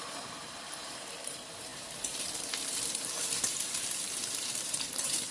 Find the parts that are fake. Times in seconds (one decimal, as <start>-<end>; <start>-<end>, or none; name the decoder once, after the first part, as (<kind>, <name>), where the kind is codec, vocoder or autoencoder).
0.0-5.3 (vocoder, BigVGAN v2)